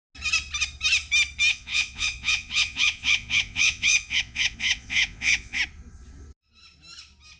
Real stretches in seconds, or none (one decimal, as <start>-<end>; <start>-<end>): 0.0-1.5; 5.6-7.4